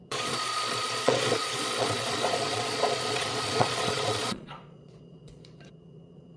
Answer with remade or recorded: remade